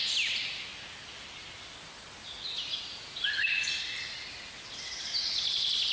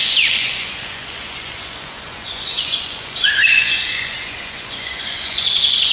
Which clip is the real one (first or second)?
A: first